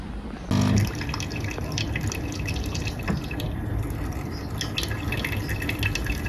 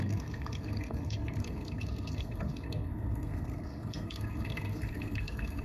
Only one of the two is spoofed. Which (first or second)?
second